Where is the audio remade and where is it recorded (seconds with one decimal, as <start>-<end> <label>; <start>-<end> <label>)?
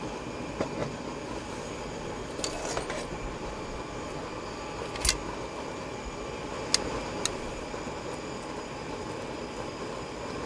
0.0-10.5 recorded